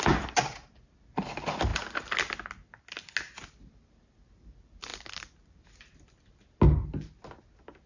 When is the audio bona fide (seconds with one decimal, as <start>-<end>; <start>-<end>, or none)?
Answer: 0.0-7.9

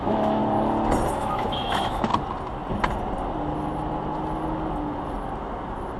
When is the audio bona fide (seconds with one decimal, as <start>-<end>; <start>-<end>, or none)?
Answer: 0.4-1.1; 2.1-6.0

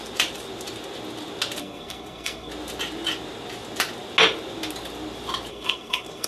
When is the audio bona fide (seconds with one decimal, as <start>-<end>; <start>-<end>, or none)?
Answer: 0.0-1.6; 2.5-5.5

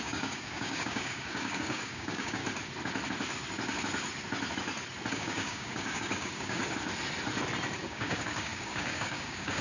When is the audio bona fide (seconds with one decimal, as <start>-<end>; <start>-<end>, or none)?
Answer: 2.4-5.1; 6.6-7.8

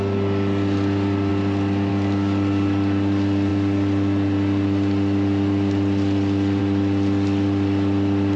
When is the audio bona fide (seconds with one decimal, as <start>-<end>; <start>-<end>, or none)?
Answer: 0.0-8.4

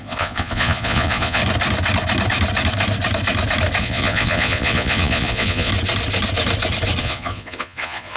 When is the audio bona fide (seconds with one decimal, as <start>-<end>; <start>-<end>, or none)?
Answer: 1.4-3.8; 5.7-7.0